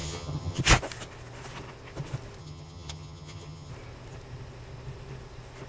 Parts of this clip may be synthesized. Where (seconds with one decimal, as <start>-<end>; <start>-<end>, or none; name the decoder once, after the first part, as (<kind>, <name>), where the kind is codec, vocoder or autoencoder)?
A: 0.0-0.6 (vocoder, HiFi-GAN); 2.4-3.7